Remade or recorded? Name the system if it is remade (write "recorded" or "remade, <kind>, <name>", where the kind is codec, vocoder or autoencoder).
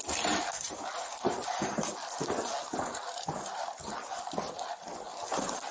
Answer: recorded